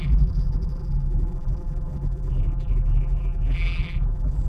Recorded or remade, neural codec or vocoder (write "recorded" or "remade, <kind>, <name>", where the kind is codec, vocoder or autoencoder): remade, vocoder, BigVGAN v2